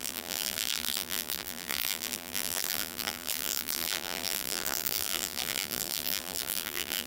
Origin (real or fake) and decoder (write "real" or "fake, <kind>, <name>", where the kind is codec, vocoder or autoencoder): fake, vocoder, BigVGAN v2